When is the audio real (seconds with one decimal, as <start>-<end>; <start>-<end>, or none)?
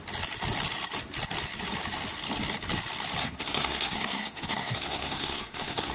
0.0-3.2